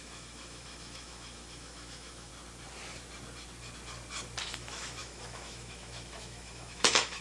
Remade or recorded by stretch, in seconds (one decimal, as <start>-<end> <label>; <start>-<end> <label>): 0.0-2.3 remade; 2.3-4.4 recorded; 4.4-7.2 remade